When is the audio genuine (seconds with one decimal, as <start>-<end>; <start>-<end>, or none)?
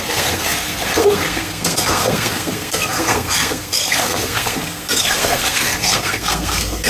none